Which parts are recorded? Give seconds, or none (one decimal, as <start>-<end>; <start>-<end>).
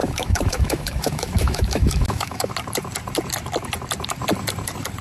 2.5-5.0